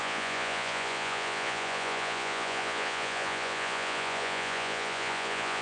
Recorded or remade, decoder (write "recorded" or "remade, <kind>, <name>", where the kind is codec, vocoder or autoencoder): remade, vocoder, Vocos